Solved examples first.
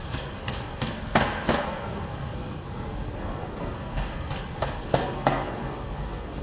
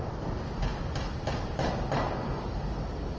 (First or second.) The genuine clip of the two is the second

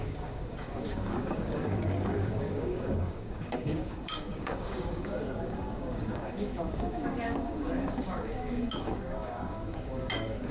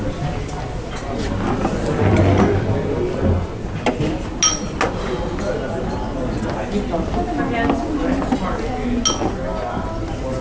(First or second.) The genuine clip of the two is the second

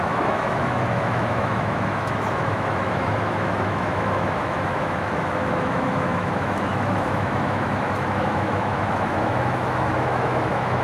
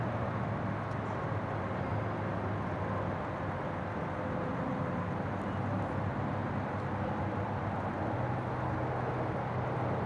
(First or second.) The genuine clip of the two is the second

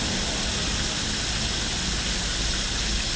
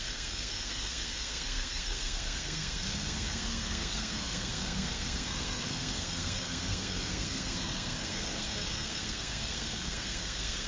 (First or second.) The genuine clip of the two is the first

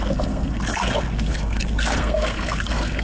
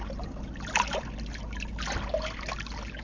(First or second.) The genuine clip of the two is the second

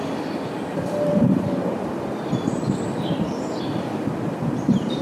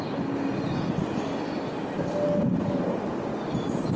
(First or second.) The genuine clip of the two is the second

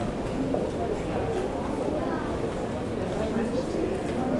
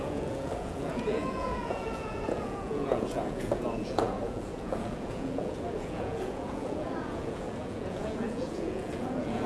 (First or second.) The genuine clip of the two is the first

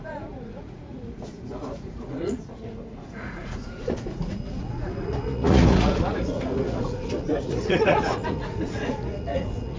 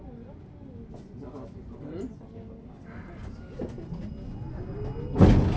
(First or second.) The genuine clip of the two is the second